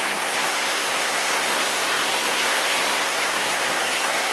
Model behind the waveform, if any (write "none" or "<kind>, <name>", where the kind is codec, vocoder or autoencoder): codec, SNAC